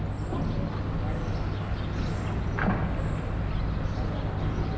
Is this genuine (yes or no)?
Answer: yes